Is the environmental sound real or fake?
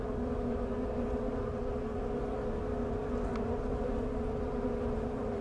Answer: real